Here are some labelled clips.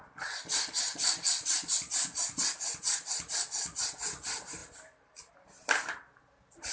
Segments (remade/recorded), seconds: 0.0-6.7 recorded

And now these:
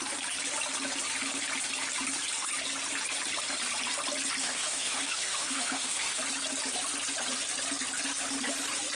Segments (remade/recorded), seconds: 0.0-4.4 recorded; 4.4-6.2 remade; 6.2-8.9 recorded